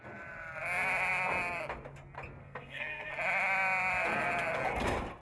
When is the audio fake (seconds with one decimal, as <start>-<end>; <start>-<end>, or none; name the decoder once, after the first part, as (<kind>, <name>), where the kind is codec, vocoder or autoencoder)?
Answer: 2.4-3.1 (codec, SNAC)